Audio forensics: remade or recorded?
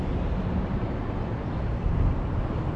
recorded